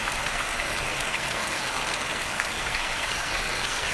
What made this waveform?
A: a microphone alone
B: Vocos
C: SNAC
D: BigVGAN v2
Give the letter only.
C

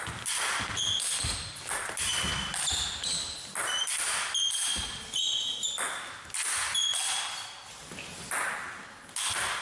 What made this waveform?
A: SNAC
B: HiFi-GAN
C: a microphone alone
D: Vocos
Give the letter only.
C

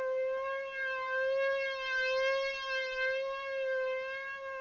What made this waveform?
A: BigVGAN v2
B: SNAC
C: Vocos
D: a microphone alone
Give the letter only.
D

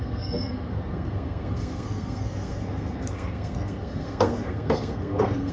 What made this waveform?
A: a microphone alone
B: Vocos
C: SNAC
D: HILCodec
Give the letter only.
C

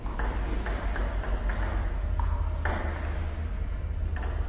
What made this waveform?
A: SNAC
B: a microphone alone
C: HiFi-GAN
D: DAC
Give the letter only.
B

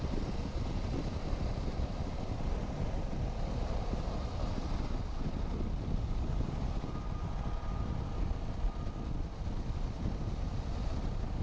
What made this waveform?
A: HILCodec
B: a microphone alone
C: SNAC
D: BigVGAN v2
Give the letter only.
B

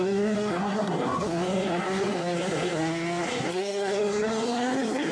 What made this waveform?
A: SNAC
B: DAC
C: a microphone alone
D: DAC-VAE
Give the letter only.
A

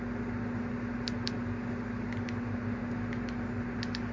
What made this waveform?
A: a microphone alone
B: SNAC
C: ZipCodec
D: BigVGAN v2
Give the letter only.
A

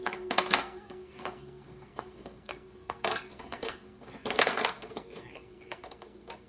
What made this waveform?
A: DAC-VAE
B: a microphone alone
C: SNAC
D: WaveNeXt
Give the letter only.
C